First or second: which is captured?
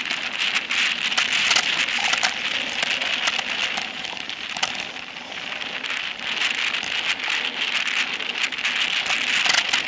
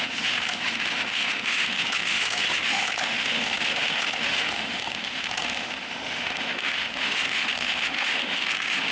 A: first